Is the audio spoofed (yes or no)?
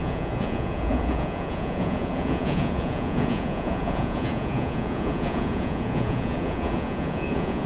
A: yes